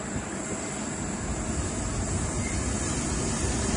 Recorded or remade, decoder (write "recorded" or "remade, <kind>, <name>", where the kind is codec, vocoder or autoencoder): recorded